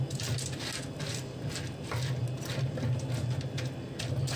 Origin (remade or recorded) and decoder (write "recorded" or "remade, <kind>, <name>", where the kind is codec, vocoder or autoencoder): recorded